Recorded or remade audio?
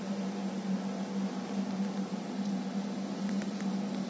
recorded